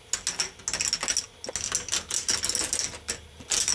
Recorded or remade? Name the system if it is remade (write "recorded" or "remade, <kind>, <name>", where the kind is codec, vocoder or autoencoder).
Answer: recorded